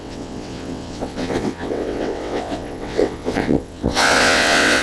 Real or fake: fake